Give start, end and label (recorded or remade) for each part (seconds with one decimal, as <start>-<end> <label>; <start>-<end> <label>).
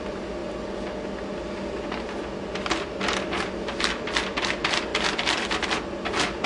0.0-6.5 recorded